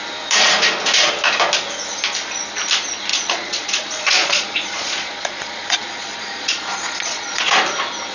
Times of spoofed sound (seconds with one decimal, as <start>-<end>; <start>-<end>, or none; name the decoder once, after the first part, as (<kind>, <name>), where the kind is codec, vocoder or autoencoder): 3.1-7.5 (vocoder, Vocos)